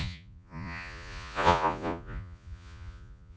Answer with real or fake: fake